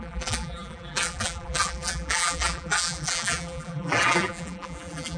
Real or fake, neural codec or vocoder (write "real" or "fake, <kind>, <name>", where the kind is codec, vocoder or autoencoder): fake, vocoder, BigVGAN v2